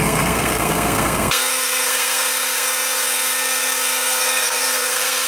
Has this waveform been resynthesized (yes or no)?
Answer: yes